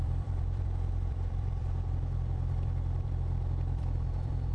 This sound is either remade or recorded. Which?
remade